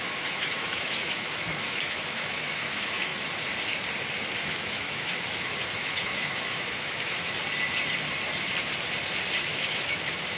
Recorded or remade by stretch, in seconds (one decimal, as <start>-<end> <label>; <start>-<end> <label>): 0.0-3.1 remade; 3.1-4.4 recorded; 4.4-7.4 remade; 7.4-9.5 recorded; 9.5-10.4 remade